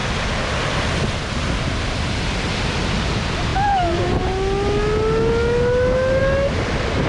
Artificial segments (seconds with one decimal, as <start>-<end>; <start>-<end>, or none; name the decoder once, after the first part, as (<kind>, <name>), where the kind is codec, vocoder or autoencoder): none